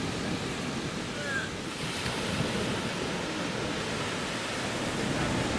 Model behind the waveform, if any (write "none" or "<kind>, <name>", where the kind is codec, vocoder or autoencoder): none